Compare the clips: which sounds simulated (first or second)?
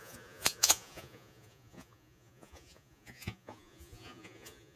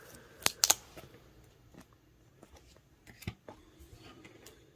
first